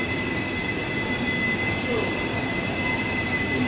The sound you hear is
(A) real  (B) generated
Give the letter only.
A